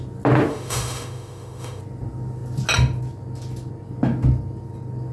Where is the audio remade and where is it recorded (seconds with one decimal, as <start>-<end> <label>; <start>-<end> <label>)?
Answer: 0.0-0.5 recorded; 0.5-1.8 remade; 1.8-5.1 recorded